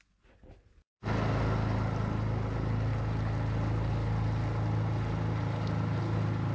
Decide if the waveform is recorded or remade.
recorded